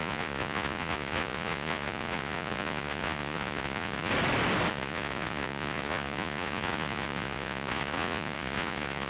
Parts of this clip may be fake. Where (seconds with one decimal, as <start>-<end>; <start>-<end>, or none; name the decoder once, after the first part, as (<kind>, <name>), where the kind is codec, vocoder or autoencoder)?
0.0-4.1 (vocoder, Vocos); 4.7-9.1